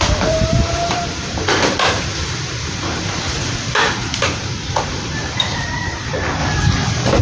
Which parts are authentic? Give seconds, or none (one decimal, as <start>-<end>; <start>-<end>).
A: 6.4-7.2